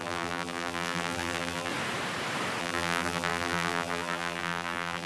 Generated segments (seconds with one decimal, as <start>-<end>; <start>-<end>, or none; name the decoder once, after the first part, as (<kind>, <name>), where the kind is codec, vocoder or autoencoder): 0.0-1.7 (vocoder, BigVGAN v2); 2.6-5.1